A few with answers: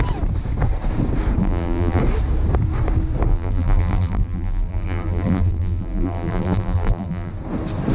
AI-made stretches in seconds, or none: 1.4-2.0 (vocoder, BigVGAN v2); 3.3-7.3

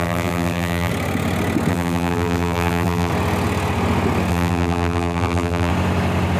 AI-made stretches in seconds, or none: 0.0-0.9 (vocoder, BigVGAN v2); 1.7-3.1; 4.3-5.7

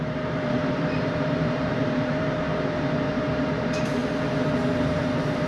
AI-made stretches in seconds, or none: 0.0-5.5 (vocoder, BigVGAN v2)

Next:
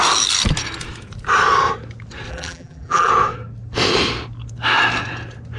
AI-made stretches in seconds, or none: 2.3-3.1 (vocoder, BigVGAN v2)